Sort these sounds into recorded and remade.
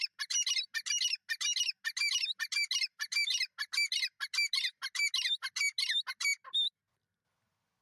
recorded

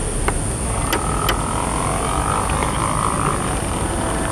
recorded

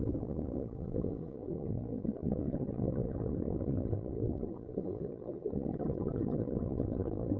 remade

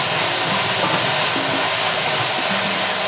recorded